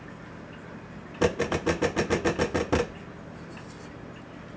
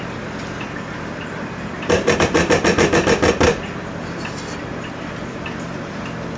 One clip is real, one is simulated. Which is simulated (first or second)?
second